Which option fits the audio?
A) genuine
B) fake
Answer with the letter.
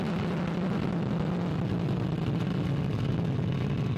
A